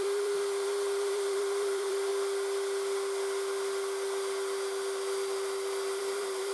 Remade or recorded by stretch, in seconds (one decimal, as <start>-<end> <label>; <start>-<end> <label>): 0.0-2.1 remade; 2.1-6.0 recorded; 6.0-6.5 remade